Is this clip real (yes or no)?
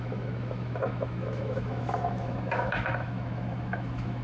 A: no